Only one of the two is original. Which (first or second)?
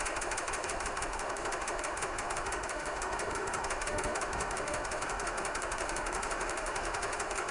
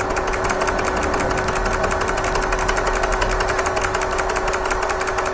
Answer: second